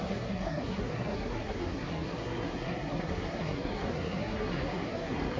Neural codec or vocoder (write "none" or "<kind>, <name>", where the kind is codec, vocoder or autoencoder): codec, SNAC